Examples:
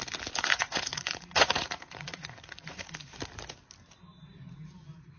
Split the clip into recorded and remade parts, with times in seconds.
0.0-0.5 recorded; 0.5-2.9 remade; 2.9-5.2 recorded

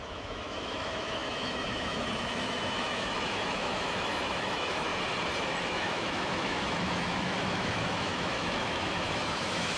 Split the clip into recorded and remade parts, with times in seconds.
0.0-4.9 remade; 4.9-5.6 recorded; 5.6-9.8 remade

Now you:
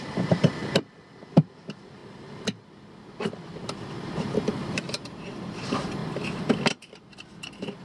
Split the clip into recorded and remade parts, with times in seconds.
0.0-0.6 remade; 0.6-1.3 recorded; 1.3-2.0 remade; 2.0-2.7 recorded; 2.7-6.0 remade; 6.0-6.7 recorded; 6.7-7.8 remade